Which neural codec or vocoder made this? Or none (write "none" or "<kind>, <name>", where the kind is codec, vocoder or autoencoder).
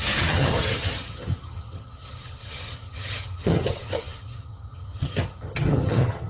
vocoder, HiFi-GAN